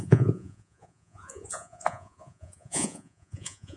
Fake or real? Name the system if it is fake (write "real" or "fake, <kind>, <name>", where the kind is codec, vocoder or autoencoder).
fake, vocoder, Vocos